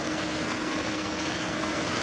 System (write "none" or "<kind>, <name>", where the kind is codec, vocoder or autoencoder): codec, SNAC